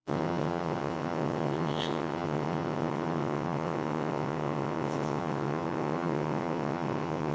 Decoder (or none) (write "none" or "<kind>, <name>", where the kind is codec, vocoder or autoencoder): vocoder, WaveNeXt